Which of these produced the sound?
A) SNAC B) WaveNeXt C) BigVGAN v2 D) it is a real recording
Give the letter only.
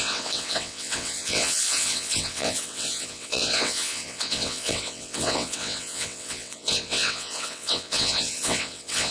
B